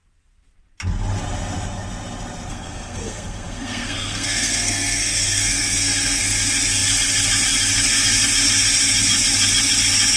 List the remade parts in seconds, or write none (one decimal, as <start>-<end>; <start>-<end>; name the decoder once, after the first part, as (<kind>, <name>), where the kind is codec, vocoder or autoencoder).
2.5-6.2 (codec, SNAC)